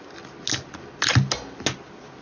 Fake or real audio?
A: real